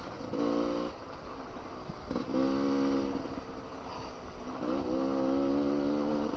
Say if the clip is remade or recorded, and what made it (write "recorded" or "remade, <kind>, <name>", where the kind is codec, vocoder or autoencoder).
recorded